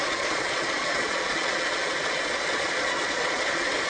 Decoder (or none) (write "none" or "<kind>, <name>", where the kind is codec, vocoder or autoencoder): vocoder, Vocos